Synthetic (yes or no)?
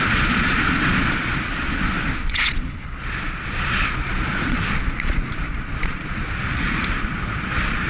yes